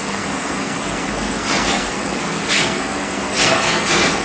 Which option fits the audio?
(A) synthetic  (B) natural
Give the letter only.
A